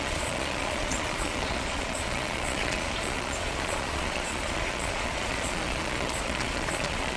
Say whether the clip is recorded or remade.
remade